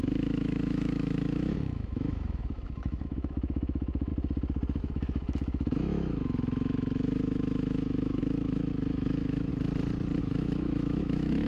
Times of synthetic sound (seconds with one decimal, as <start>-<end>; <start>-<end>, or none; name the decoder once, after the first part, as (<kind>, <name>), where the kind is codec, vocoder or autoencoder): 0.0-4.1 (autoencoder, DAC-VAE); 4.8-9.5; 10.2-11.5